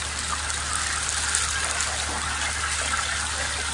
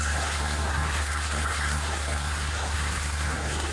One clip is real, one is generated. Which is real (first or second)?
first